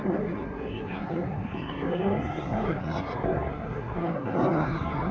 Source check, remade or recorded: remade